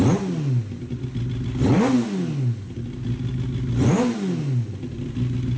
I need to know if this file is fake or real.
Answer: real